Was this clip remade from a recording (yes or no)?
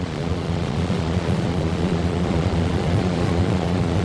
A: yes